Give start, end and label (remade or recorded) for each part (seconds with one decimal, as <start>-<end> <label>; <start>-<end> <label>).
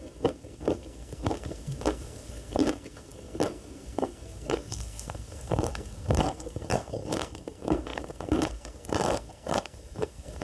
0.0-10.4 remade